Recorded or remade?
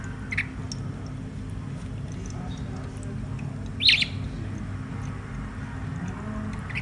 recorded